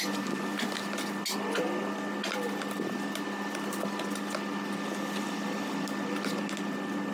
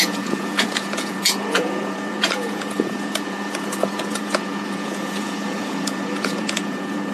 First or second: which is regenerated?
second